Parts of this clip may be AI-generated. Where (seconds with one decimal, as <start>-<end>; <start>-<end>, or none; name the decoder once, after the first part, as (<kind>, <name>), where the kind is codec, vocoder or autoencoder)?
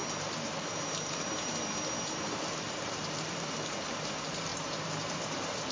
1.1-5.7 (vocoder, BigVGAN v2)